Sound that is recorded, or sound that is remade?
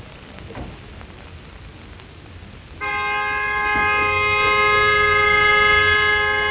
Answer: recorded